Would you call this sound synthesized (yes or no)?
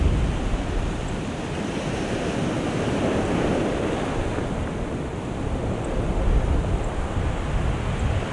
no